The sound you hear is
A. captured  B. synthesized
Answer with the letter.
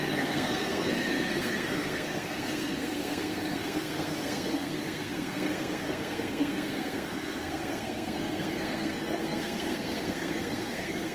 B